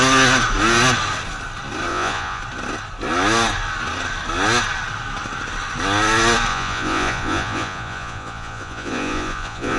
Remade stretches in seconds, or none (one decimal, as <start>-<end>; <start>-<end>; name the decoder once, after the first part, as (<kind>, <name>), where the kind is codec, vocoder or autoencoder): 1.9-2.4 (vocoder, Vocos); 6.5-9.8